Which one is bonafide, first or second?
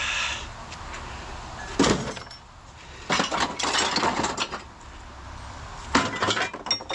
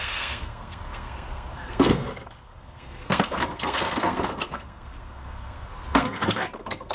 first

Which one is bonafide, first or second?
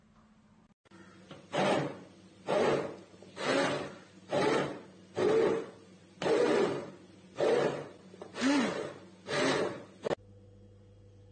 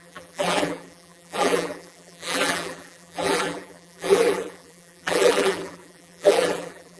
first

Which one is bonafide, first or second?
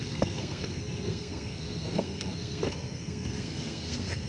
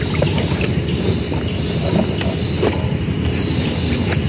second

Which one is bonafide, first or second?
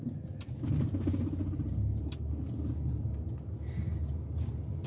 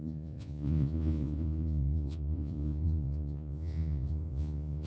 first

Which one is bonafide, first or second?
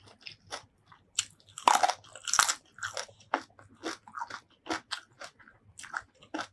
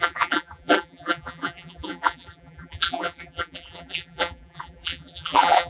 first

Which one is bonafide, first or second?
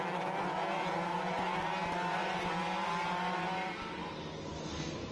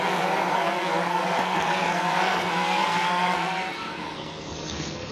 first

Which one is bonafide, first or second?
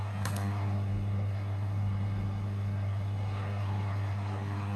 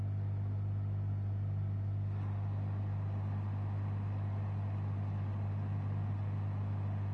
second